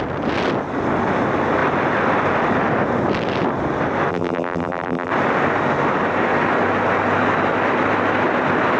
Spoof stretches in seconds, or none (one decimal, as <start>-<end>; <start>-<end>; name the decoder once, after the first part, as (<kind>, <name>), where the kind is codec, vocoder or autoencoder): 4.1-5.1 (vocoder, BigVGAN v2)